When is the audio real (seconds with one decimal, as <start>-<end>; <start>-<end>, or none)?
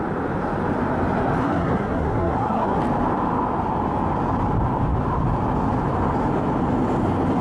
0.0-1.4; 2.8-7.4